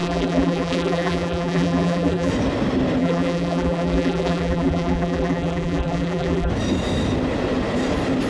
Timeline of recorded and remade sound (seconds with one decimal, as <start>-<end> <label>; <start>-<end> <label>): 0.0-2.3 remade; 2.3-3.0 recorded; 3.0-6.5 remade; 6.5-8.3 recorded